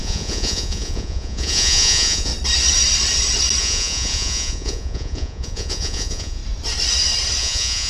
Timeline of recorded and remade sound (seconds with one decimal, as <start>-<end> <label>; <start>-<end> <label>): 0.0-2.3 remade; 2.3-3.6 recorded; 3.6-6.4 remade; 6.4-7.4 recorded; 7.4-7.9 remade